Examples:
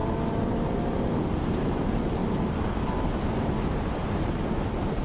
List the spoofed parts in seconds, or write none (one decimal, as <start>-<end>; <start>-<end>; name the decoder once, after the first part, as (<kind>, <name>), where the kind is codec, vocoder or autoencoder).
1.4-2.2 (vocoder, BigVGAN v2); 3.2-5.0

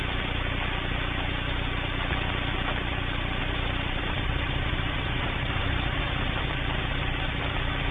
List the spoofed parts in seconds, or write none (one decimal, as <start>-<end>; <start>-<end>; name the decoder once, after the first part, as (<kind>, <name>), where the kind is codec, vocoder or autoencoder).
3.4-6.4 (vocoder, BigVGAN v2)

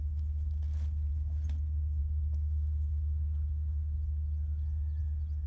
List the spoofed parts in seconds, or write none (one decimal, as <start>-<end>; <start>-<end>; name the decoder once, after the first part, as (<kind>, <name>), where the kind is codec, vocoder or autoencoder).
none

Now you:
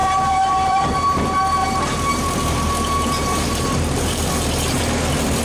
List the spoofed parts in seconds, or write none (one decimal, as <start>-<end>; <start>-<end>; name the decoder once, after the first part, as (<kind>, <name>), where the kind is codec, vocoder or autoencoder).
0.0-1.2 (vocoder, BigVGAN v2); 1.6-4.8